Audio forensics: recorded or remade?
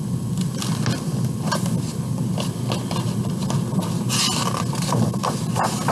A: recorded